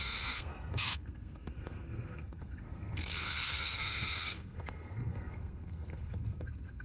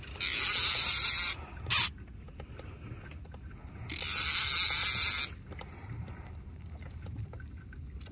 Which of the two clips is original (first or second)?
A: second